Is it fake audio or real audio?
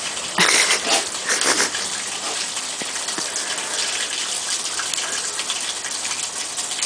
real